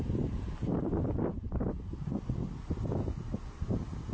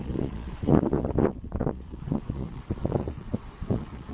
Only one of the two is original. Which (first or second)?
first